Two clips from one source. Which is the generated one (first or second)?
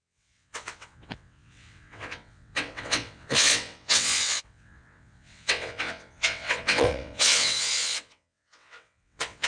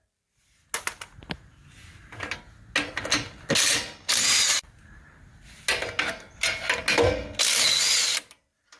first